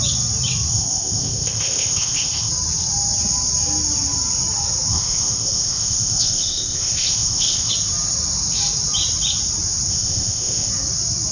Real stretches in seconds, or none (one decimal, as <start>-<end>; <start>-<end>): 0.0-0.7; 2.5-4.9; 7.7-9.9; 10.7-11.3